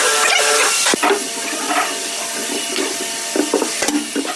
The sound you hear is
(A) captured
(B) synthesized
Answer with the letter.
A